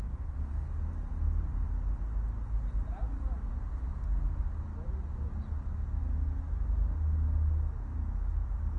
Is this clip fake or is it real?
real